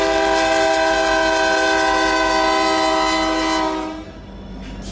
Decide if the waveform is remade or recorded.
recorded